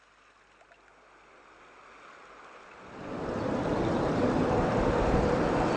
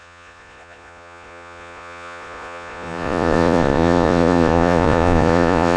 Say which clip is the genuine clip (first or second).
first